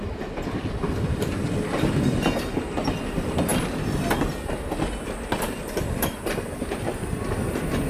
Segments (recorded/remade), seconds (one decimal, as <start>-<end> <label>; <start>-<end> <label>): 0.0-7.9 recorded